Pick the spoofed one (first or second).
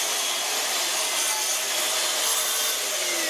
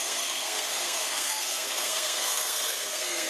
second